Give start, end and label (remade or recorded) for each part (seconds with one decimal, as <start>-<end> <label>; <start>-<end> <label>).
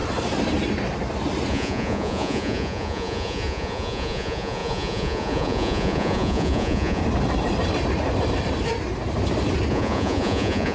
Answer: 0.0-1.5 recorded; 1.5-7.0 remade; 7.0-9.7 recorded; 9.7-10.7 remade